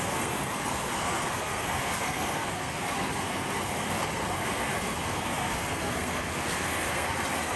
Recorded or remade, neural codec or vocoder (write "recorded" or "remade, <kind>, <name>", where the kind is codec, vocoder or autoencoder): remade, codec, SNAC